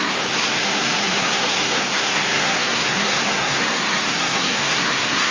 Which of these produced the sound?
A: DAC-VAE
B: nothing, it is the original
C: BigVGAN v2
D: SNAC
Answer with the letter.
D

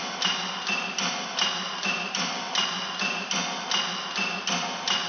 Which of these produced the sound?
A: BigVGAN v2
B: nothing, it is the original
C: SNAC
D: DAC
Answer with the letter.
B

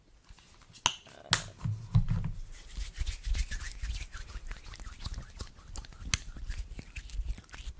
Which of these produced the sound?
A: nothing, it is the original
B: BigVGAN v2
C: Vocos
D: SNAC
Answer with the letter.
A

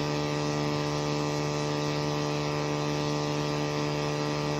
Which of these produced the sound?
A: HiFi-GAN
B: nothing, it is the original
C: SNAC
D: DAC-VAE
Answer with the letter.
B